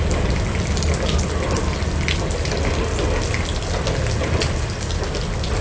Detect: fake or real real